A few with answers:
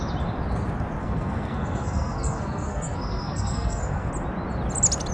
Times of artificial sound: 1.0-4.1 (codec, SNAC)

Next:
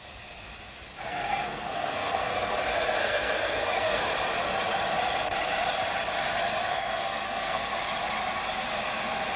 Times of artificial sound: 1.0-2.3 (codec, SNAC); 3.0-4.0; 6.7-7.7